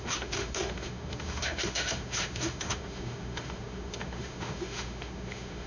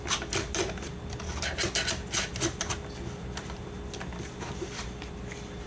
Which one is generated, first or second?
first